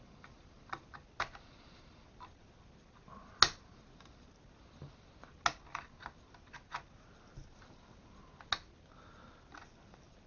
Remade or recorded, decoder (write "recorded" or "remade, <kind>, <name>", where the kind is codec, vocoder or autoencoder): recorded